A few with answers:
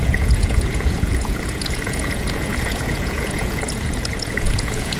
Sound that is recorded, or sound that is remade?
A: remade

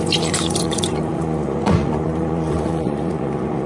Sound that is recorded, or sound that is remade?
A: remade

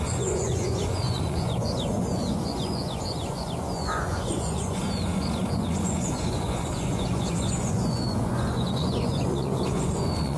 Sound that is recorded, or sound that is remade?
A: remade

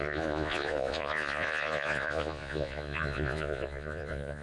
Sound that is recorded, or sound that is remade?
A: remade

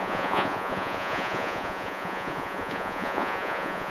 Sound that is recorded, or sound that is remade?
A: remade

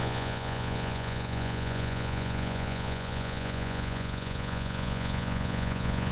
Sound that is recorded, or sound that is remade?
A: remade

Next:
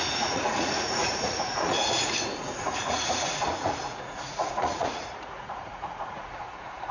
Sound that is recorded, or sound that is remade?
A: remade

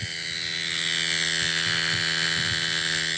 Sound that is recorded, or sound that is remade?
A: recorded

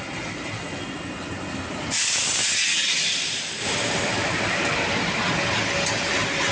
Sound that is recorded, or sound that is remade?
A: recorded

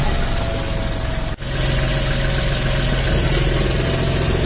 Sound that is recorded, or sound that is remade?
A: recorded